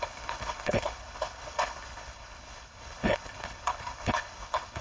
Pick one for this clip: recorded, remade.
remade